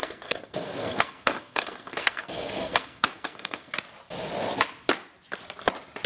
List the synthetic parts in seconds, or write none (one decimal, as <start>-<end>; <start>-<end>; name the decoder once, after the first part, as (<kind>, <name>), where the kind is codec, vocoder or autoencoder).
0.0-3.7 (codec, SNAC)